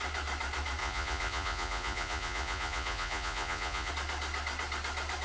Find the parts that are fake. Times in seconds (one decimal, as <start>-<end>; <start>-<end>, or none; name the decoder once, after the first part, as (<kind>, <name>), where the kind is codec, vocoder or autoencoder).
0.8-3.9 (vocoder, Vocos)